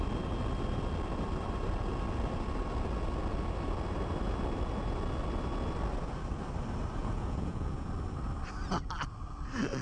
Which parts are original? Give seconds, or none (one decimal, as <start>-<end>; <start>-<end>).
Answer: 0.0-7.0; 7.9-9.8